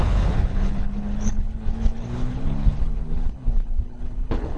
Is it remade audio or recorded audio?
remade